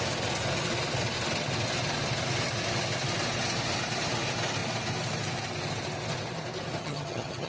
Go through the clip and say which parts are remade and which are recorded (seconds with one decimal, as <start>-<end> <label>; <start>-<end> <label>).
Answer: 0.0-6.8 recorded; 6.8-7.5 remade